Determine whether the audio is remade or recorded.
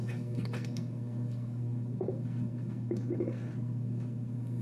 remade